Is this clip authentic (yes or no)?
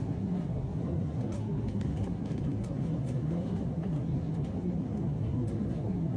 no